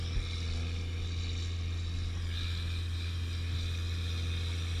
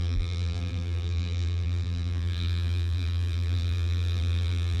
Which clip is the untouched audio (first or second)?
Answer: first